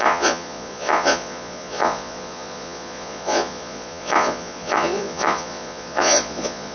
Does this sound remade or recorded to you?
remade